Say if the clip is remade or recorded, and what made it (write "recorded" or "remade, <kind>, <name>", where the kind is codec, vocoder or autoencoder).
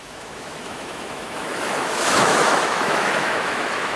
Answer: remade, autoencoder, DAC-VAE